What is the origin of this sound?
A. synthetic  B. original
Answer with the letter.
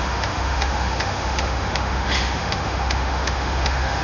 A